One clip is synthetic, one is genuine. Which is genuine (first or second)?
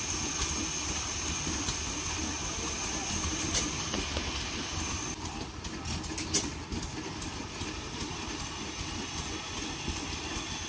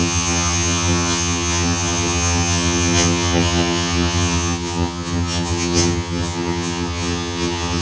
first